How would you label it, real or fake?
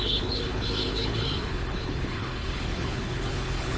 fake